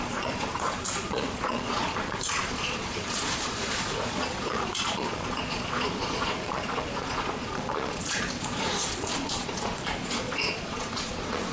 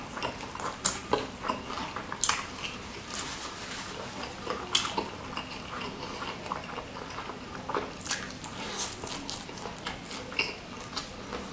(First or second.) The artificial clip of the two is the first